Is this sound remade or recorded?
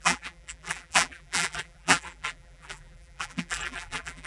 remade